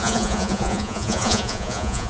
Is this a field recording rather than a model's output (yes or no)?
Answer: no